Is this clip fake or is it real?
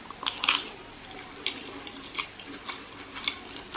real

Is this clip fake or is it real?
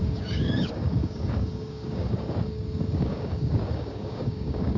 fake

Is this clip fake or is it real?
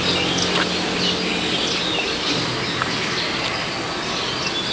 real